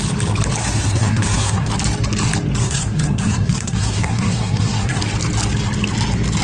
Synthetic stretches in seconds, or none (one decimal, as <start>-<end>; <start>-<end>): 0.6-1.7; 2.6-5.0